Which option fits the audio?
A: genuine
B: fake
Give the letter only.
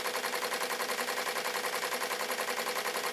A